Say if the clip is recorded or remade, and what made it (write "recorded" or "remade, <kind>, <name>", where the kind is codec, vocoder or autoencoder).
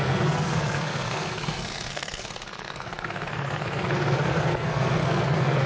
remade, codec, SNAC